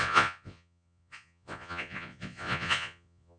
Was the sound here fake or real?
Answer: fake